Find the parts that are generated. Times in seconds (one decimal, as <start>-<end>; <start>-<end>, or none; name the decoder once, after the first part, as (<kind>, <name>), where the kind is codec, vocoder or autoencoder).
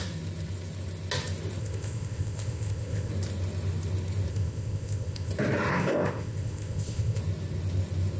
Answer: 1.6-3.1 (codec, ZipCodec); 4.3-5.3; 5.7-7.2